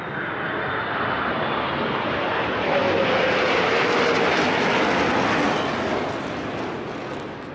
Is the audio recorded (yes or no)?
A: yes